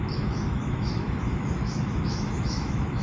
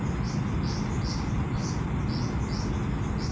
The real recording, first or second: second